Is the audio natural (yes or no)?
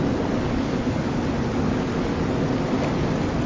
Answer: yes